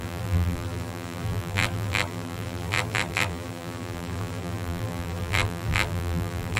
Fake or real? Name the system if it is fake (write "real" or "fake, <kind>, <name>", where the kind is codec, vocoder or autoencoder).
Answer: fake, vocoder, BigVGAN v2